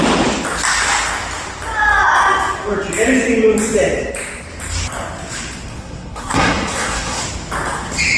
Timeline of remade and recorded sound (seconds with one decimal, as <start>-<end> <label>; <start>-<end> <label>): 0.0-5.7 recorded; 5.7-7.2 remade; 7.2-8.2 recorded